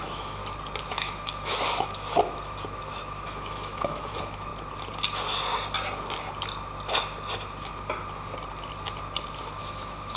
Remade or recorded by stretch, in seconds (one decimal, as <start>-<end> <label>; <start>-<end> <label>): 0.0-0.4 remade; 0.4-0.9 recorded; 0.9-4.5 remade; 4.5-9.6 recorded; 9.6-10.2 remade